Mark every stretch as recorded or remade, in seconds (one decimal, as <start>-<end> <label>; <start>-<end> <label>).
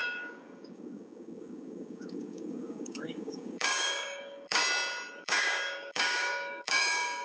0.0-4.6 remade; 4.6-5.2 recorded; 5.2-7.2 remade